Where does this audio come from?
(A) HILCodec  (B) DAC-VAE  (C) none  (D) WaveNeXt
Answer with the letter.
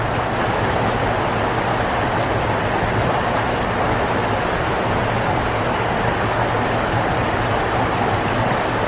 C